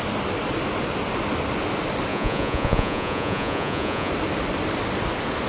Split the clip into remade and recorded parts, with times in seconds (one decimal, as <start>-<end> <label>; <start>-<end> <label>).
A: 0.0-2.1 recorded; 2.1-4.1 remade; 4.1-5.5 recorded